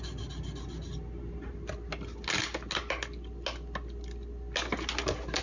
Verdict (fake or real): real